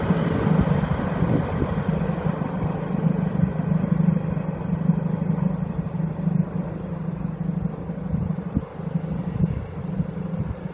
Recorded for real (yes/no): yes